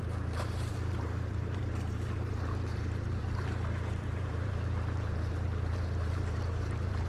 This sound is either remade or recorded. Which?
remade